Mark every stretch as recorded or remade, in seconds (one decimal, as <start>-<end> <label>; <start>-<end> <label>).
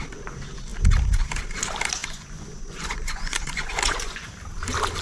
0.0-2.0 recorded; 2.0-4.3 remade; 4.3-5.0 recorded